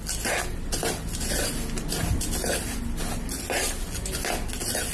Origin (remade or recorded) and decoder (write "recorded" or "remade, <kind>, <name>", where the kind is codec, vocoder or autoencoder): recorded